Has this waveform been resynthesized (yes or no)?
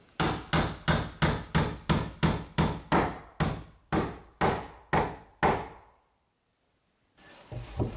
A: no